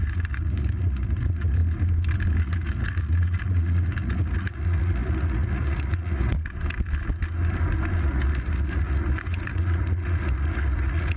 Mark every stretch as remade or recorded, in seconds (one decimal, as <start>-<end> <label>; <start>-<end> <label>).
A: 0.0-1.6 remade; 1.6-2.4 recorded; 2.4-6.3 remade; 6.3-8.0 recorded; 8.0-11.2 remade